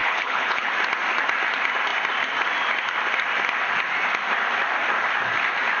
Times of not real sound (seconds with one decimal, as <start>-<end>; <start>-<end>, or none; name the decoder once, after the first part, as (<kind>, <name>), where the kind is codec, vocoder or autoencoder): 0.0-0.7 (codec, HILCodec)